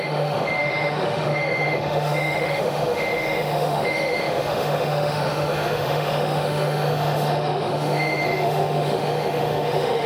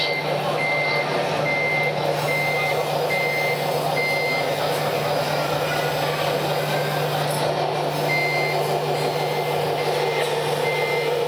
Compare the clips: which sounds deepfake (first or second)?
first